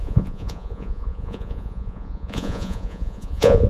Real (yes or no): no